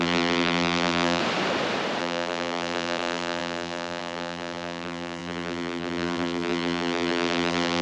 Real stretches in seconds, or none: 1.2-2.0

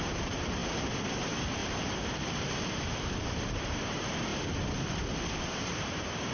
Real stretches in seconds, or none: 0.6-1.2; 4.3-5.3

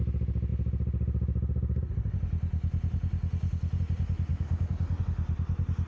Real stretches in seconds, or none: 0.0-4.3; 5.0-5.9

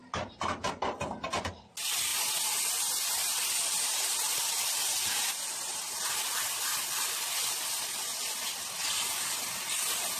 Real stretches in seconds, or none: 0.0-10.2

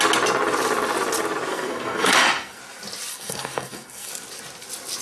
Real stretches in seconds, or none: 0.0-1.5; 2.6-3.1; 4.1-5.0

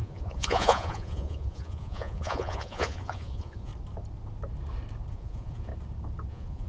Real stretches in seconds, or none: 3.7-5.1; 5.7-6.3

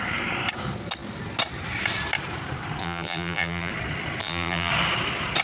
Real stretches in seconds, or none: 0.0-2.8; 3.7-4.2; 4.7-5.4